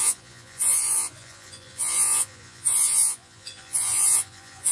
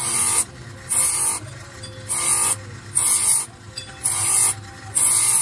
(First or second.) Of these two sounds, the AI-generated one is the first